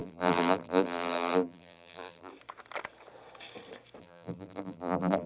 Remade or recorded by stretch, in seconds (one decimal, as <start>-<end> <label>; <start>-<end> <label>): 0.0-2.3 remade; 2.3-4.0 recorded; 4.0-5.3 remade